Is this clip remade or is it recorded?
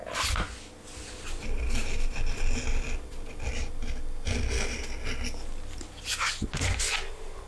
recorded